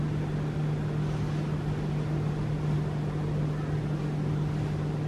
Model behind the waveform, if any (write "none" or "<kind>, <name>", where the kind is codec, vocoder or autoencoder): none